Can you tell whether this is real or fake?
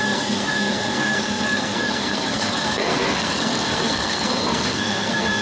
fake